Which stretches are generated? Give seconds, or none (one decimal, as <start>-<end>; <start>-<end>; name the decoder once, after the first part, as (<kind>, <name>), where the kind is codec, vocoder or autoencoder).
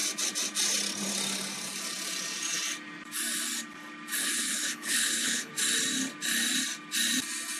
4.2-5.5 (codec, HILCodec)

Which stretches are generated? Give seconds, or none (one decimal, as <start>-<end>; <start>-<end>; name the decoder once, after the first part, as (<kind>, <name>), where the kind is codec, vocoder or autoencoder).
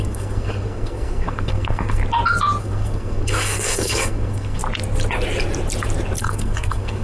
0.0-2.0 (codec, SNAC); 2.6-4.6; 6.2-7.0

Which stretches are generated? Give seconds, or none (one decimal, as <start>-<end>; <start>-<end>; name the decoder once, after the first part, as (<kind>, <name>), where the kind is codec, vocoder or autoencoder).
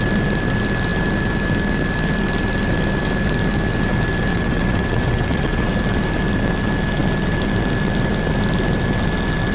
4.3-5.7 (vocoder, WaveNeXt)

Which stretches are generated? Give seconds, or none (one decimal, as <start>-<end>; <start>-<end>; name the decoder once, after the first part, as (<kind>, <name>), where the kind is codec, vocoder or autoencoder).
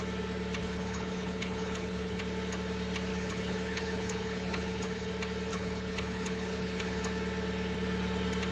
0.6-2.2 (codec, HILCodec); 3.1-5.1; 5.5-7.0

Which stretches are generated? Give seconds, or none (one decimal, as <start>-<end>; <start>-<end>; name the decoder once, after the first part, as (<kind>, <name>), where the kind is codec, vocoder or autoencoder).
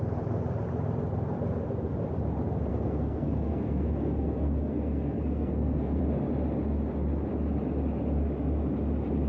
2.7-6.0 (codec, SNAC)